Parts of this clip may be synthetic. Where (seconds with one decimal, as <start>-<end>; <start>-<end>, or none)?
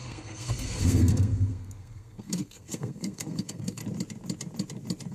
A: 0.0-3.8